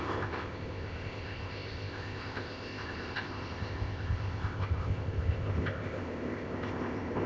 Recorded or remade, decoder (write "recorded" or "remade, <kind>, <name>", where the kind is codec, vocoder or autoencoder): remade, codec, ZipCodec